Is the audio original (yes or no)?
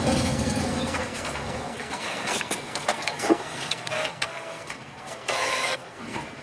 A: no